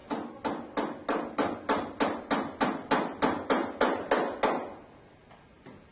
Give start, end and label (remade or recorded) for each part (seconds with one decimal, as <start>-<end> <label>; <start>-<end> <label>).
0.0-5.9 recorded